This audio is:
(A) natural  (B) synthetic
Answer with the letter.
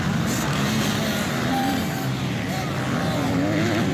A